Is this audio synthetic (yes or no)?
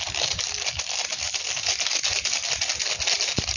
no